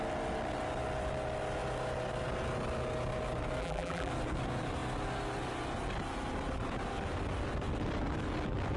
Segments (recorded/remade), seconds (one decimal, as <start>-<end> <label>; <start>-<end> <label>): 0.0-3.6 recorded; 3.6-4.1 remade; 4.1-8.8 recorded